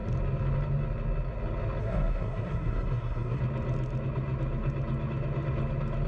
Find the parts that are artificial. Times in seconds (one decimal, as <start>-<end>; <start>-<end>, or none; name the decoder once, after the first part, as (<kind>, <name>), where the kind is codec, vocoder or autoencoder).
1.8-3.4 (codec, SNAC)